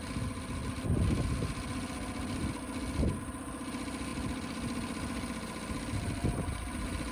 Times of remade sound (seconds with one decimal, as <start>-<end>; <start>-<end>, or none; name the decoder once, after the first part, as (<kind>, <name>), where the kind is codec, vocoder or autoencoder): none